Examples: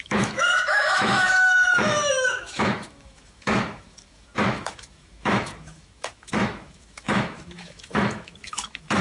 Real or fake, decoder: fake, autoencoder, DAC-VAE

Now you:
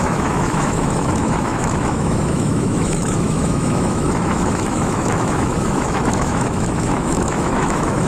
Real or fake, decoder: fake, autoencoder, DAC-VAE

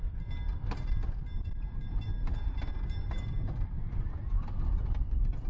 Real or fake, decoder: real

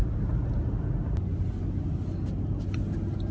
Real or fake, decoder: real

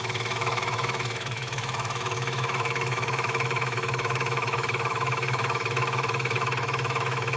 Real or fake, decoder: fake, autoencoder, DAC-VAE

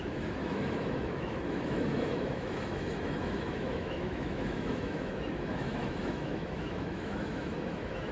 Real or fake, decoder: fake, autoencoder, DAC-VAE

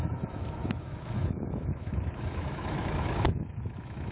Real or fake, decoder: fake, autoencoder, DAC-VAE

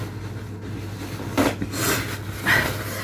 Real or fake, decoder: real